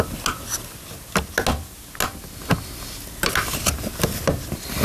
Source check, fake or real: real